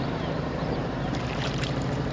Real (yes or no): no